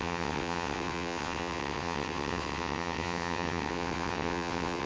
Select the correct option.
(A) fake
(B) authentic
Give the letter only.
A